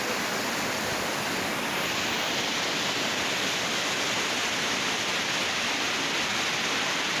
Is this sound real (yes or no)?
yes